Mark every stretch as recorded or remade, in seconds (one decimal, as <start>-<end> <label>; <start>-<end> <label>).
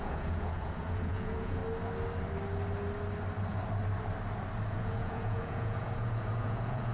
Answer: 0.0-1.6 remade; 1.6-4.7 recorded; 4.7-6.9 remade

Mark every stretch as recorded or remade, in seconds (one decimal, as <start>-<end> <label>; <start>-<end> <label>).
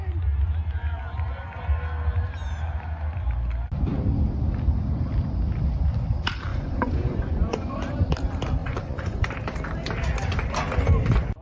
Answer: 0.0-6.5 recorded; 6.5-7.7 remade; 7.7-8.6 recorded; 8.6-9.2 remade; 9.2-11.4 recorded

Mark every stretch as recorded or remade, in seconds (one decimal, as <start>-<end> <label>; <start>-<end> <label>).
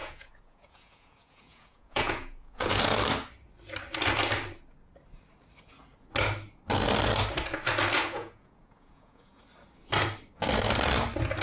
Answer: 0.0-2.8 remade; 2.8-8.0 recorded; 8.0-9.4 remade; 9.4-11.4 recorded